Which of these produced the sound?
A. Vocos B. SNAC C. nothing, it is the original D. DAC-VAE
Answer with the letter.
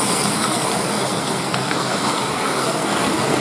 B